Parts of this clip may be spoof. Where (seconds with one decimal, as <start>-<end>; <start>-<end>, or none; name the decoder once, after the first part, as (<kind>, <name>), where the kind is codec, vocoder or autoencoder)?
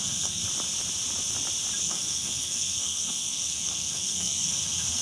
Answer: 0.0-0.4 (codec, SNAC); 1.8-5.0